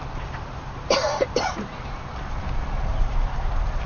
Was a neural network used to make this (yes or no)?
yes